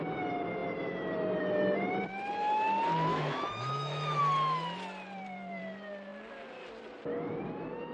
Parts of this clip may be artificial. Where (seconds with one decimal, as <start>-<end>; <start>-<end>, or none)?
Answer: 3.1-4.2